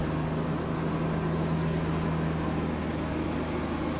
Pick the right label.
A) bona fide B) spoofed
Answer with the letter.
A